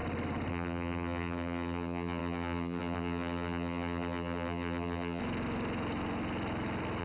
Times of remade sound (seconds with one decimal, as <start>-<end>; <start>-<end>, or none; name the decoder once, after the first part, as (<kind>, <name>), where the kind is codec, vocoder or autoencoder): 0.5-5.2 (vocoder, BigVGAN v2)